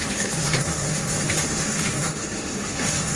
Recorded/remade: remade